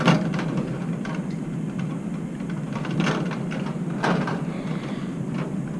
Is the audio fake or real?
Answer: fake